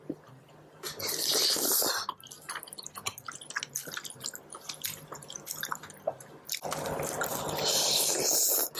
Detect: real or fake real